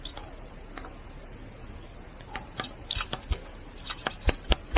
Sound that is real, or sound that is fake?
real